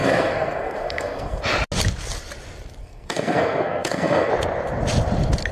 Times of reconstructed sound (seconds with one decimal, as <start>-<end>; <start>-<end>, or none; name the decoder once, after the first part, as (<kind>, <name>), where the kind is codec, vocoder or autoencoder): 0.0-1.4 (codec, SNAC); 2.8-4.3